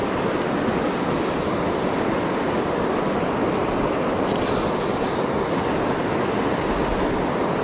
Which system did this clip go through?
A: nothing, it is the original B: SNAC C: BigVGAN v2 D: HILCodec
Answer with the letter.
A